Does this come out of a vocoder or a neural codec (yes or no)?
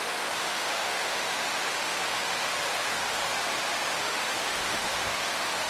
yes